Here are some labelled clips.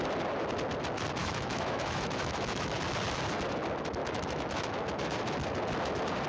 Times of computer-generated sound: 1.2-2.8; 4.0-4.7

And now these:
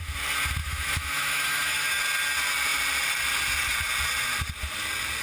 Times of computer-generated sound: 0.6-2.0

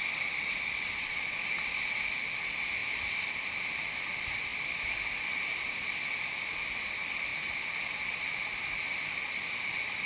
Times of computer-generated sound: none